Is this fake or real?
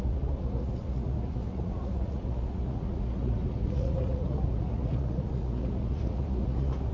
fake